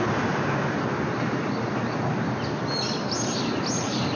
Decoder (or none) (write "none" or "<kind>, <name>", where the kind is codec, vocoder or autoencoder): none